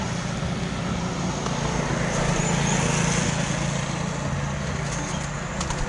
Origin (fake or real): real